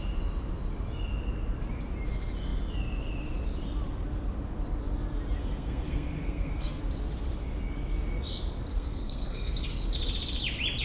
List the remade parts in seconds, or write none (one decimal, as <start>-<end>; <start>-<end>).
5.4-6.8; 8.7-9.5